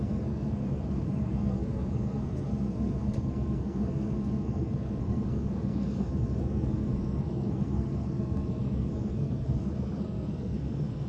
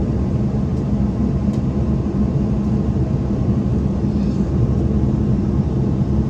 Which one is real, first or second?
second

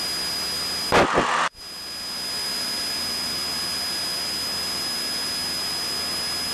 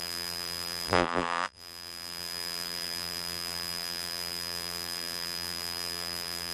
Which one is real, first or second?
first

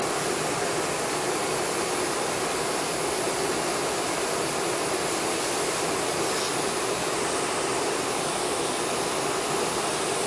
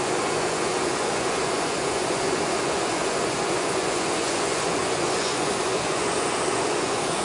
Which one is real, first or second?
first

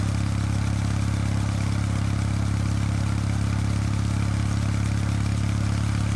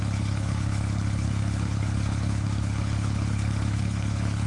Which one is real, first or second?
first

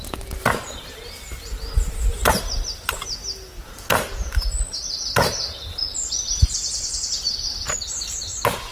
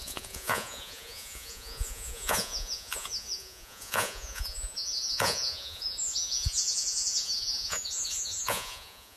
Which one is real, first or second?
first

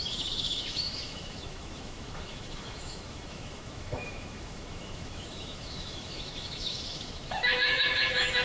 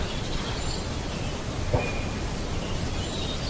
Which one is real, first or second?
second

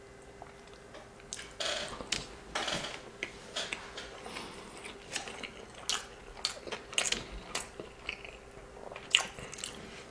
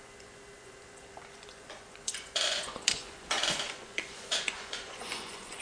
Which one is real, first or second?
first